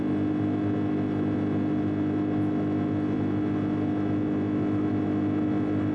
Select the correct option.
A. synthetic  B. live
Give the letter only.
B